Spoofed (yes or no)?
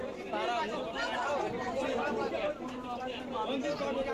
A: no